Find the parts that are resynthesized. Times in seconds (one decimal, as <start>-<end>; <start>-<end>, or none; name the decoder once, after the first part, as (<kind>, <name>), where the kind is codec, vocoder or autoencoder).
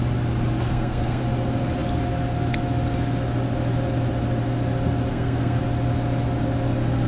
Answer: 0.7-1.2 (codec, SNAC); 5.1-5.6